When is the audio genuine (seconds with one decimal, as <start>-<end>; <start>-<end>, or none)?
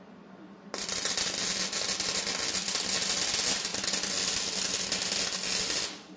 0.0-6.2